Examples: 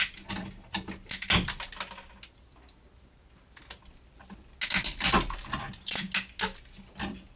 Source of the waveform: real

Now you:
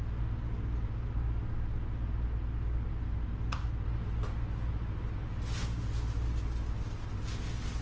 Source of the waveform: real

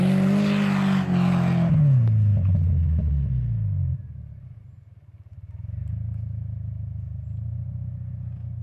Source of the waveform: real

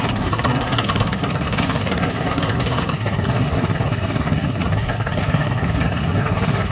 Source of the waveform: fake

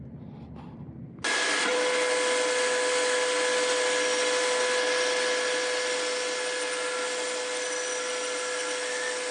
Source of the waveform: real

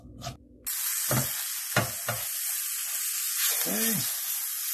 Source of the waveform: real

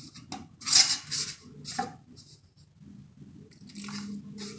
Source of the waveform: real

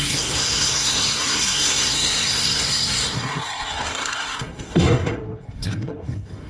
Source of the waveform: fake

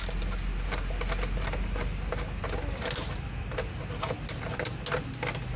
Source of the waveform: real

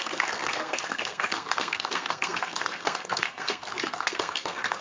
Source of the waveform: fake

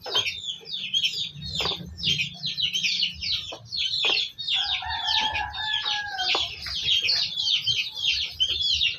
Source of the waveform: real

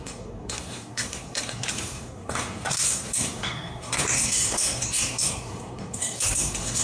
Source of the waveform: fake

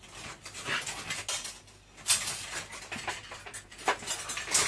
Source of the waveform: real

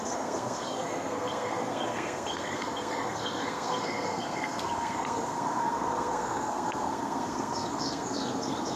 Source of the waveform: fake